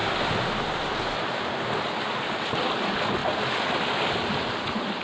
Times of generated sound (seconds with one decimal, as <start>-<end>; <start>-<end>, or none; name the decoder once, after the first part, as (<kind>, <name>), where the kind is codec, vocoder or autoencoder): none